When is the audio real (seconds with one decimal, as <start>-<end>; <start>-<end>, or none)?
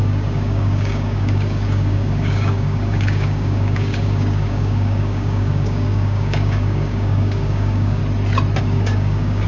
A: 8.0-8.6